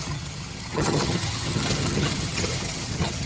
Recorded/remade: remade